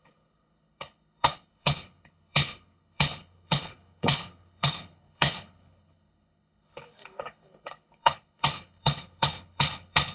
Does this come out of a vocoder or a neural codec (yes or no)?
yes